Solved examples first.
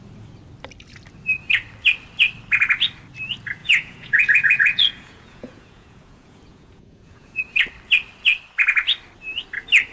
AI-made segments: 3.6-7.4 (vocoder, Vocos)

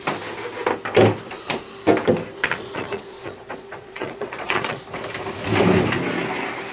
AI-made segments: 2.4-4.8 (vocoder, Vocos)